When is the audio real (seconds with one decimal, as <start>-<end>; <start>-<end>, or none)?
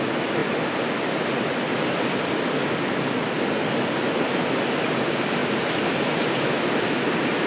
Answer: 0.0-7.5